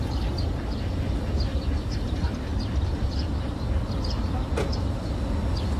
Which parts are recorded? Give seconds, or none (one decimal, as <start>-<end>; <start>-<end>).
0.0-5.8